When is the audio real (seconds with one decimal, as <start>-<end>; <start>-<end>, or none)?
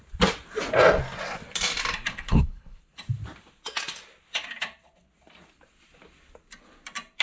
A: 0.0-2.1; 2.8-7.2